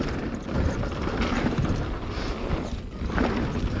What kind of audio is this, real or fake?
real